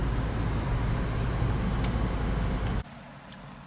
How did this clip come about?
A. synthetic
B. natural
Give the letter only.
B